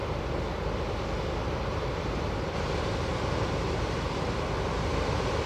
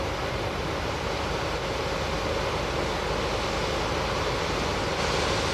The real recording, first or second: second